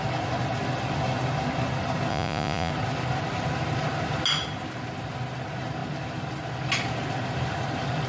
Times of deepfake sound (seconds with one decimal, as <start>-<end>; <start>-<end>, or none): 2.1-2.7